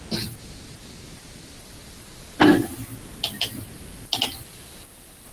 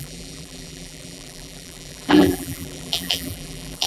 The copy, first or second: second